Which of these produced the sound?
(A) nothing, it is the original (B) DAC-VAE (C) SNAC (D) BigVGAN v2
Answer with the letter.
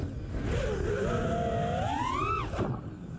A